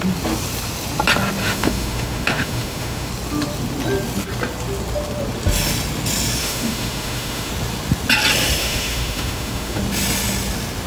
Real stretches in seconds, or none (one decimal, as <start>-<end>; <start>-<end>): 0.0-1.4; 3.1-6.4; 7.5-8.6; 9.8-10.9

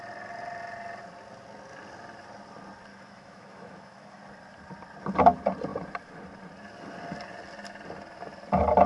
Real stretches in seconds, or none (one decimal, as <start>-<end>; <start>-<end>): 0.0-2.9; 4.2-8.9

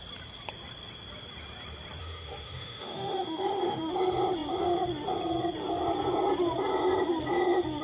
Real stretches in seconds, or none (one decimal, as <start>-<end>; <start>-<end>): 0.0-2.0; 3.9-7.8

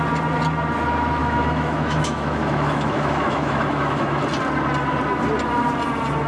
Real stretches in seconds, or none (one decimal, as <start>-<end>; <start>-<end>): 0.0-1.2; 4.2-6.3